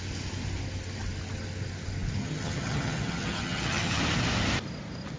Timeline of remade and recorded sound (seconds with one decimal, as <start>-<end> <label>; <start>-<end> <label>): 0.0-2.2 recorded; 2.2-4.0 remade; 4.0-5.2 recorded